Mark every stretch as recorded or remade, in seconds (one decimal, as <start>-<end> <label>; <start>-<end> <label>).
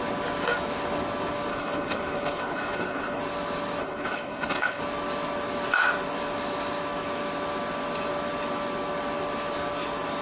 0.0-1.5 recorded; 1.5-3.2 remade; 3.2-3.8 recorded; 3.8-4.8 remade; 4.8-10.2 recorded